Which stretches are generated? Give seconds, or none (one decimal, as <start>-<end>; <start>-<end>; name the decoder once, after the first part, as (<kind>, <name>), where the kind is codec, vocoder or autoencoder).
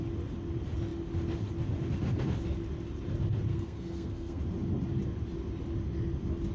3.5-4.4 (codec, SNAC)